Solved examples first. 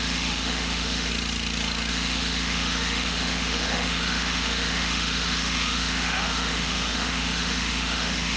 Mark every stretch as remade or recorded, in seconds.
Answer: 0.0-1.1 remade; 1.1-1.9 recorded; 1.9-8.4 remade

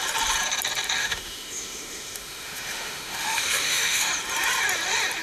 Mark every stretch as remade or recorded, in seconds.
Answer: 0.0-1.0 recorded; 1.0-4.1 remade; 4.1-5.2 recorded

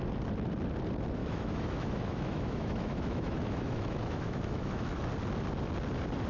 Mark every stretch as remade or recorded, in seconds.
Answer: 0.0-1.2 recorded; 1.2-5.0 remade; 5.0-6.3 recorded

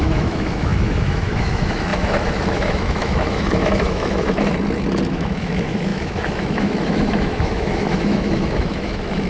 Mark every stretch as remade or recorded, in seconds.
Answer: 0.0-4.4 remade; 4.4-5.1 recorded; 5.1-9.3 remade

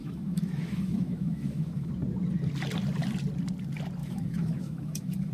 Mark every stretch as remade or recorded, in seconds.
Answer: 0.0-1.9 remade; 1.9-4.0 recorded; 4.0-5.3 remade